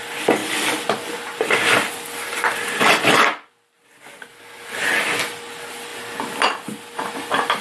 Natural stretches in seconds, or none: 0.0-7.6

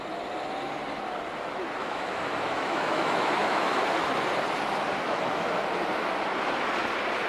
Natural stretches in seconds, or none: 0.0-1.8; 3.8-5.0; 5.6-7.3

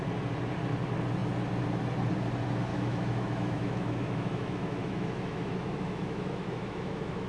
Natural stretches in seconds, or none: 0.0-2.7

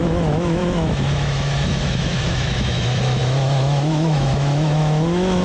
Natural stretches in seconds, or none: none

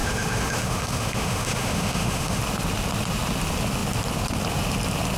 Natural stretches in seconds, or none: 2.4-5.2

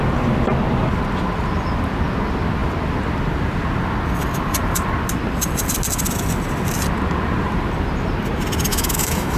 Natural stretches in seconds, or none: 0.0-8.7

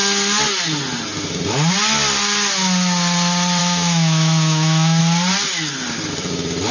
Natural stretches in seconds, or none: 0.0-3.6; 5.0-6.7